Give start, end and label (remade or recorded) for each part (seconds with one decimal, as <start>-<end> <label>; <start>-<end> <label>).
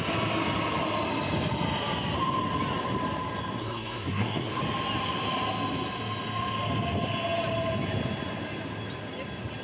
0.0-3.6 recorded; 3.6-4.6 remade; 4.6-9.6 recorded